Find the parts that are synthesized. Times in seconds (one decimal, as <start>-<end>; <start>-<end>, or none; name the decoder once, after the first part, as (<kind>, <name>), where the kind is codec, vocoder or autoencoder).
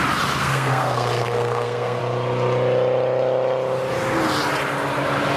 0.4-2.0 (codec, SNAC)